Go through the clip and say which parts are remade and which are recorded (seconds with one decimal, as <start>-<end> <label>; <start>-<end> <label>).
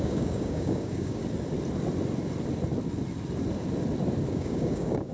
0.0-1.2 remade; 1.2-4.3 recorded; 4.3-5.1 remade